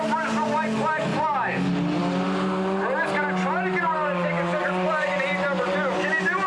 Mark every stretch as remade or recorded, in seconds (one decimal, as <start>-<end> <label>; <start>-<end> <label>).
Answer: 0.0-6.5 recorded